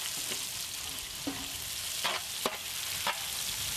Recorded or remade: recorded